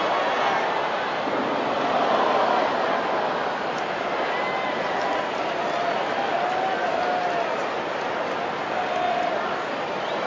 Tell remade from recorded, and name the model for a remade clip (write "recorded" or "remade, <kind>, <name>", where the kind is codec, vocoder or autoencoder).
recorded